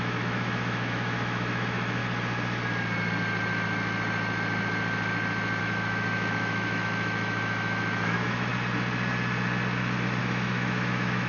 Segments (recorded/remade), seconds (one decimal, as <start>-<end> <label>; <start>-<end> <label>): 0.0-2.0 remade; 2.0-5.6 recorded; 5.6-8.5 remade; 8.5-10.2 recorded; 10.2-11.3 remade